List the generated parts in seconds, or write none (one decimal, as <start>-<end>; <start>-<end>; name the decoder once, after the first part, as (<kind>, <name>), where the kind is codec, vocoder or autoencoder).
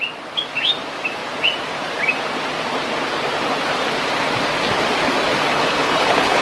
5.5-6.4 (codec, HILCodec)